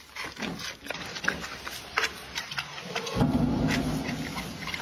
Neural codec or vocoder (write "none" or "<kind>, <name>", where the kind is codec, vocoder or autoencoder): none